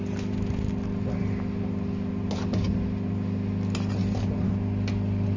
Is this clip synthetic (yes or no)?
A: no